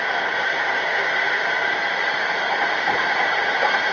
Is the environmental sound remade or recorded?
remade